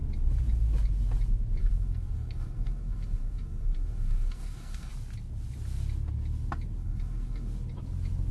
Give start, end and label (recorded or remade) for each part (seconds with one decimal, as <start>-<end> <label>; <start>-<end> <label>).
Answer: 0.0-1.6 recorded; 1.6-4.9 remade; 4.9-6.8 recorded; 6.8-7.5 remade; 7.5-8.3 recorded